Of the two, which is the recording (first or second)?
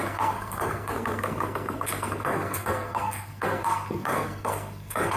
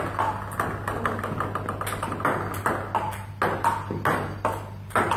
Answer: second